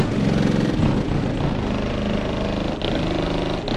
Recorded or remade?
recorded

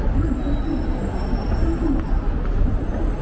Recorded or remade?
recorded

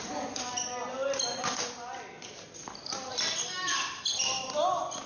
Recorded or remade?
recorded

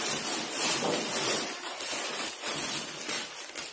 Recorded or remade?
recorded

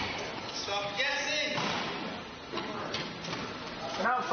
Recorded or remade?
recorded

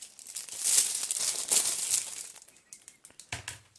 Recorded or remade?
recorded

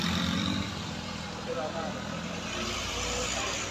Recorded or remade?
remade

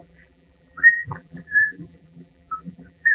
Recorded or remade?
remade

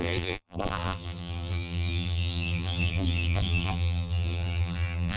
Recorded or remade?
remade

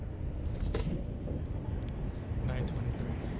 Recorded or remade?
recorded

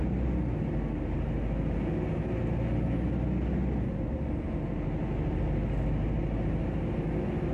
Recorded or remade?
recorded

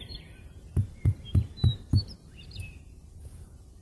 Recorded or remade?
remade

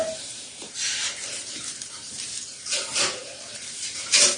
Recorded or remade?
remade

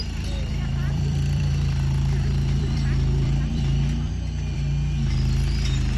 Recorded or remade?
remade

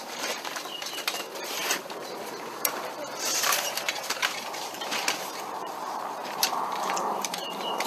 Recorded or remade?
remade